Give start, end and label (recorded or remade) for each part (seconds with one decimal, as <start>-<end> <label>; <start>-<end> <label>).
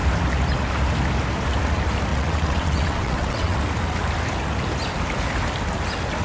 0.0-2.1 recorded; 2.1-3.6 remade; 3.6-6.2 recorded